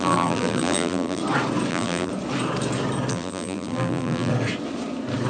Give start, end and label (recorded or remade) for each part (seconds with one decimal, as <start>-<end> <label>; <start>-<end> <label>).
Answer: 0.0-1.2 remade; 1.2-1.7 recorded; 1.7-2.1 remade; 2.1-3.1 recorded; 3.1-4.3 remade; 4.3-5.3 recorded